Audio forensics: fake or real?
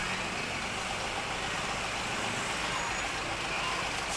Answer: real